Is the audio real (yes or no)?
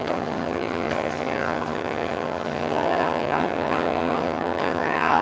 no